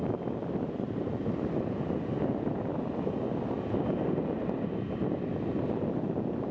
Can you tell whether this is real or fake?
real